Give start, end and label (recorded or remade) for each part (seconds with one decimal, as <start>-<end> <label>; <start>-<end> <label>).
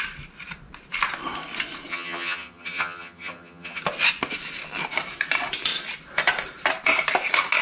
0.0-1.9 recorded; 1.9-3.8 remade; 3.8-7.6 recorded